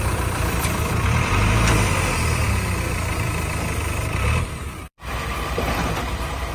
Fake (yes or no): yes